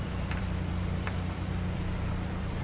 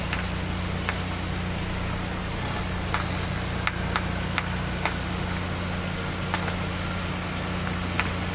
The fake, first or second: first